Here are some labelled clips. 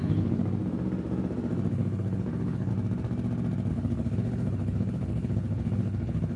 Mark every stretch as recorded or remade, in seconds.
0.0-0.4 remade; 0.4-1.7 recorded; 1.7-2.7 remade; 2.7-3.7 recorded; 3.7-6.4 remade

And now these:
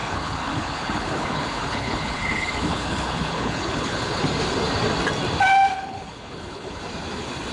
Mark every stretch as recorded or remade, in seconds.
0.0-4.2 remade; 4.2-5.7 recorded; 5.7-6.8 remade; 6.8-7.5 recorded